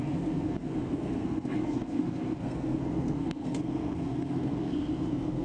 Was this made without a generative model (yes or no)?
no